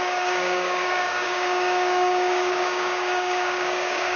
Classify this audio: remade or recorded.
remade